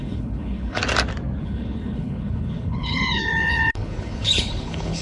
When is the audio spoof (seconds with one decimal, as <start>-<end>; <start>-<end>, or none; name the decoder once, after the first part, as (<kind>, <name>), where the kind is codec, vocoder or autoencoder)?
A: 0.0-0.8 (codec, HILCodec); 1.4-5.0